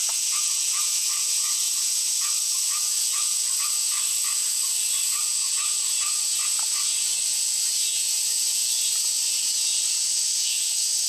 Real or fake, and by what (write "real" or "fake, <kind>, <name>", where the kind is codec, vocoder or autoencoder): fake, vocoder, Vocos